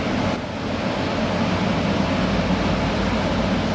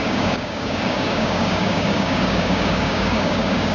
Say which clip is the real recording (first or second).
first